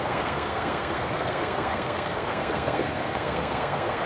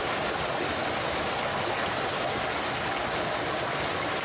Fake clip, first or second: first